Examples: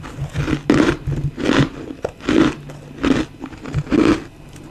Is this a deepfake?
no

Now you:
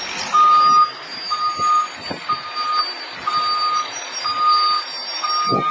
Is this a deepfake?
no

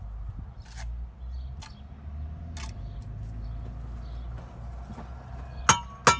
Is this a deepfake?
no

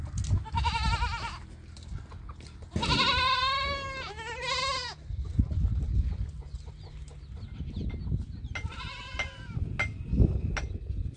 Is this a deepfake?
no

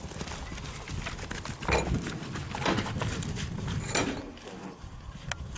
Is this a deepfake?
no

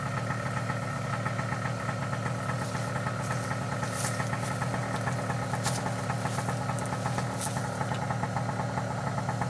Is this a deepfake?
no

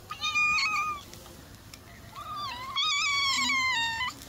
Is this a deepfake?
no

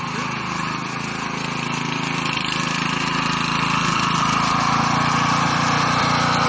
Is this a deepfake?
no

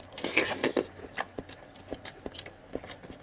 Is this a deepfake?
no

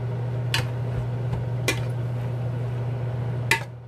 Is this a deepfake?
no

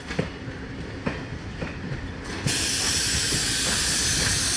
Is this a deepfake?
yes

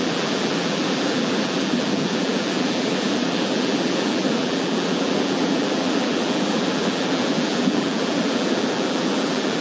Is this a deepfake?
yes